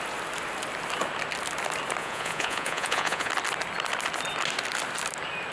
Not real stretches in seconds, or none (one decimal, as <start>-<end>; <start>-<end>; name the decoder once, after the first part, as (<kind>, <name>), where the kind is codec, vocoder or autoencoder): 2.0-3.3 (vocoder, Vocos)